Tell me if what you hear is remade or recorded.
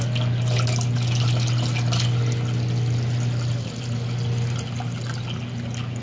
recorded